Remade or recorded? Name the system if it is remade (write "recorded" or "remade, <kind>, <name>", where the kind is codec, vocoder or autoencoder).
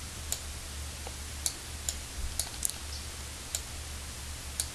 recorded